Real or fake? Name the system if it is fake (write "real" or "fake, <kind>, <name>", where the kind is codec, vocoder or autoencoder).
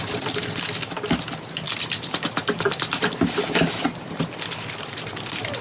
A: fake, vocoder, BigVGAN v2